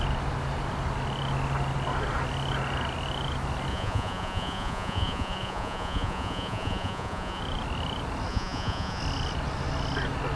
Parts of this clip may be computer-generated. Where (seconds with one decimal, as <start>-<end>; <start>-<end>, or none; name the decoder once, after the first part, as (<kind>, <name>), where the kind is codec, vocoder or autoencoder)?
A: 3.7-7.4 (vocoder, Vocos); 8.3-9.0